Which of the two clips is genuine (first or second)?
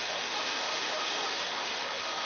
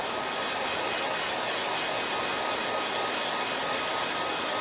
second